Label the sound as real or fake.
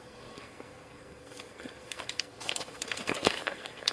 fake